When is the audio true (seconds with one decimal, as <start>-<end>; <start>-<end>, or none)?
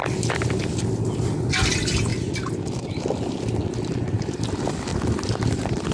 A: 0.0-5.9